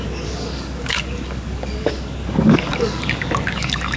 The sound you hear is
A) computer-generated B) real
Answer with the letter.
A